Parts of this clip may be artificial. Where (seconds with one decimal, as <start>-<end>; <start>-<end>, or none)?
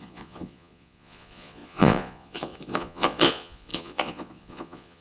0.0-5.0